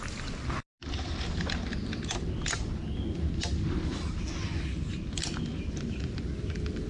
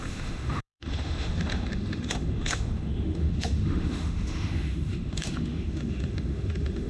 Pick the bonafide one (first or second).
first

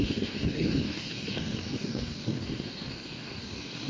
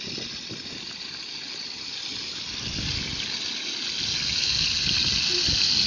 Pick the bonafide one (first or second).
second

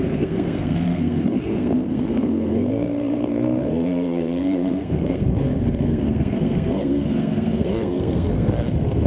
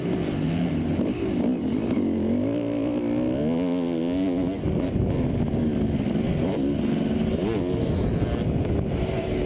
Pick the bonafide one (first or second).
second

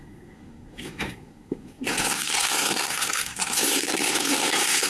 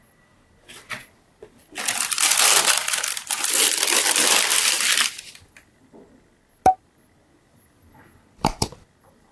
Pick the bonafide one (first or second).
second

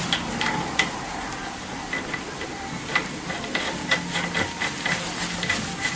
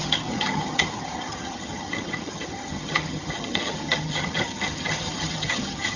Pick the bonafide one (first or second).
first